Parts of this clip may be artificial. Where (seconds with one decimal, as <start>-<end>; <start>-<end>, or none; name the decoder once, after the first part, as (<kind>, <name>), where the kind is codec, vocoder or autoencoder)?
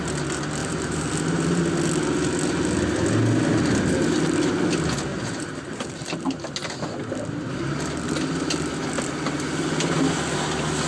0.6-1.6 (vocoder, BigVGAN v2); 5.1-5.9